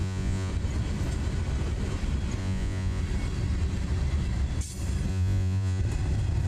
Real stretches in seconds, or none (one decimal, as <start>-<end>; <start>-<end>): 0.5-2.4; 3.0-5.1; 5.8-6.5